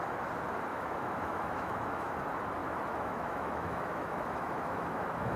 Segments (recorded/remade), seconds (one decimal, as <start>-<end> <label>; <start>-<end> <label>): 0.0-0.7 recorded; 0.7-2.1 remade; 2.1-2.6 recorded; 2.6-5.4 remade